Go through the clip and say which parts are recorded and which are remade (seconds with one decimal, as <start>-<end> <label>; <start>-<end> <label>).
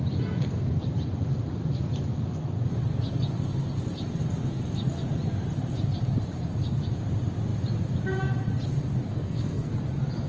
0.0-9.1 recorded; 9.1-9.7 remade; 9.7-10.3 recorded